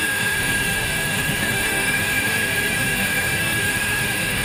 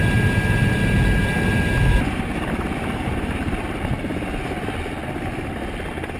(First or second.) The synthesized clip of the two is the first